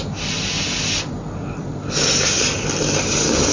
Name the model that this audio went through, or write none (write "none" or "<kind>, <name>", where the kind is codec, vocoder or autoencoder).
none